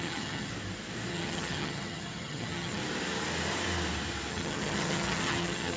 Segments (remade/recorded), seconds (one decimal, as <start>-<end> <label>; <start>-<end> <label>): 0.0-0.5 remade; 0.5-1.1 recorded; 1.1-2.8 remade; 2.8-4.3 recorded; 4.3-5.8 remade